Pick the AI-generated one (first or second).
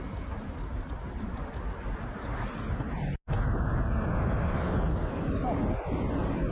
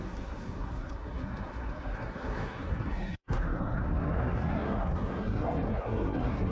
second